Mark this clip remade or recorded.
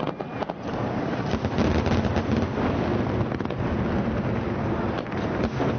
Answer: recorded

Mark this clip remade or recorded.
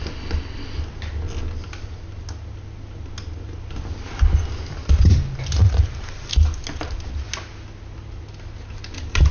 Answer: recorded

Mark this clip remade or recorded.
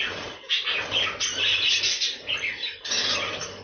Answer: recorded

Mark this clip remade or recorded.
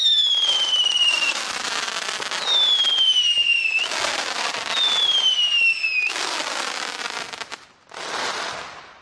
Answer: recorded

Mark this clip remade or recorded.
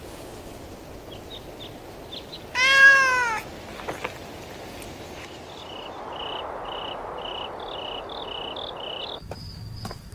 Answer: recorded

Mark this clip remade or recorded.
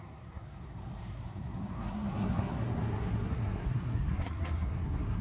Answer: remade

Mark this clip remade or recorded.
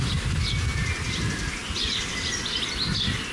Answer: recorded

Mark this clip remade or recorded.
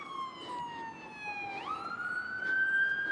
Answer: recorded